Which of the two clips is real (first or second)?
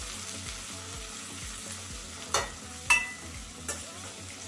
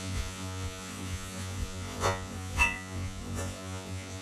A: first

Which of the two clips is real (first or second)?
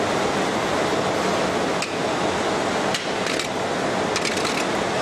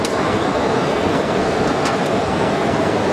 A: first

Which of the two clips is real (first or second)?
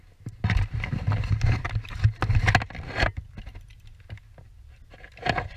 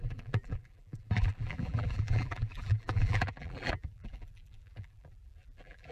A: first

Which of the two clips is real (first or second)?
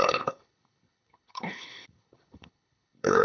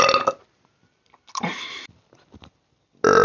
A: second